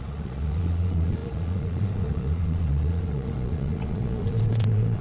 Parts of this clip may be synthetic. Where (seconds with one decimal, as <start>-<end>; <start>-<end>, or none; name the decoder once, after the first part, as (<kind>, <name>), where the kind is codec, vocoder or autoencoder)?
0.0-5.0 (vocoder, Vocos)